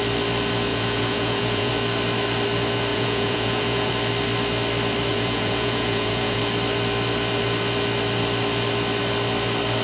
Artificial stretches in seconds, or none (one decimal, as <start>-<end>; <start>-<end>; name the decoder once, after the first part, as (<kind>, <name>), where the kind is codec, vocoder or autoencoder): 0.7-1.7 (vocoder, Vocos); 2.9-3.9; 5.1-6.4